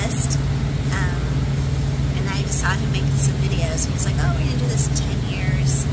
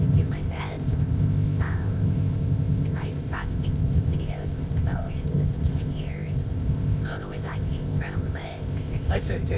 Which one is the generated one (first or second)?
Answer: second